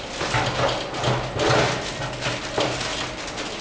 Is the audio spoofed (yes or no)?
no